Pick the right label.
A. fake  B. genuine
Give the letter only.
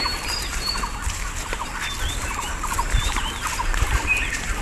B